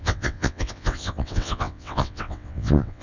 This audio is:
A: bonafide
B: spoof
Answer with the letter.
B